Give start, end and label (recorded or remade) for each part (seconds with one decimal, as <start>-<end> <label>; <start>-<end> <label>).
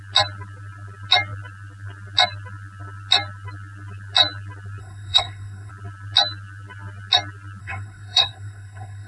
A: 0.0-4.8 recorded; 4.8-5.7 remade; 5.7-7.6 recorded; 7.6-9.1 remade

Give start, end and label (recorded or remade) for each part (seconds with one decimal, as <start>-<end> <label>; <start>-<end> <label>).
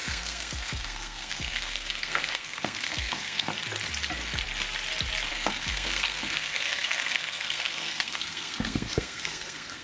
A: 0.0-3.5 remade; 3.5-5.3 recorded; 5.3-9.8 remade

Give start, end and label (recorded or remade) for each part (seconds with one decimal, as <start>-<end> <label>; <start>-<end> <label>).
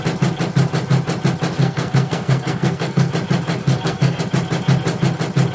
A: 0.0-1.6 recorded; 1.6-3.1 remade; 3.1-3.6 recorded; 3.6-4.2 remade; 4.2-5.5 recorded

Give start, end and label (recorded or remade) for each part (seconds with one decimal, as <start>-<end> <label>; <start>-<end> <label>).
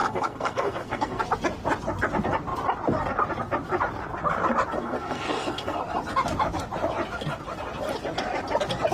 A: 0.0-1.2 remade; 1.2-4.8 recorded; 4.8-5.8 remade; 5.8-8.9 recorded